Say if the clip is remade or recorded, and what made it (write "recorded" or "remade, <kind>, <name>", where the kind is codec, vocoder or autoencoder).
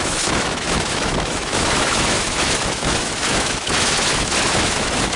remade, autoencoder, DAC-VAE